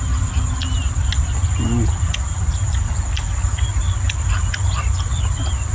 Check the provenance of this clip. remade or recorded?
recorded